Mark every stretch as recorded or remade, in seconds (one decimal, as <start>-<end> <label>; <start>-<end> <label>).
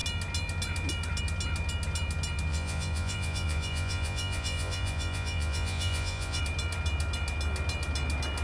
0.0-2.5 recorded; 2.5-6.4 remade; 6.4-8.4 recorded